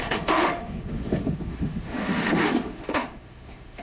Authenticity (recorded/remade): remade